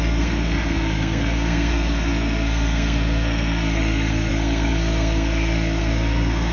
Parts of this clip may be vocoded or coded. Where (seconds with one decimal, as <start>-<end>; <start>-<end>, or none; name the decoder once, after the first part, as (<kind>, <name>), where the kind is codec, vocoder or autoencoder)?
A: 0.0-6.5 (codec, SNAC)